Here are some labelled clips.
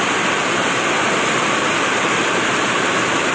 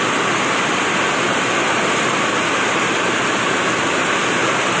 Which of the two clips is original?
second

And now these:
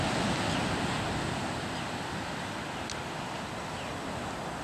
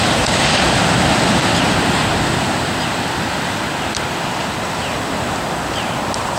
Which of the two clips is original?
first